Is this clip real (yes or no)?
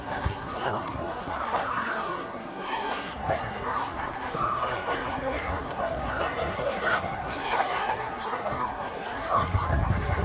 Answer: no